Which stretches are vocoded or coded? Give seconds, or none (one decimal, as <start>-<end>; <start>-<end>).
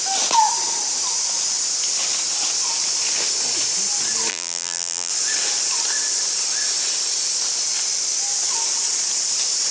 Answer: 4.3-5.1